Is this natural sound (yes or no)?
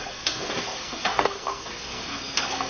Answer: no